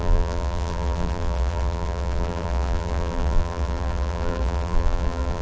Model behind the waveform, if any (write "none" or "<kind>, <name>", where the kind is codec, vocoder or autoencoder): vocoder, BigVGAN v2